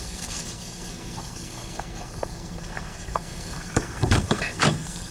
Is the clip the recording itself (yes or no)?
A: no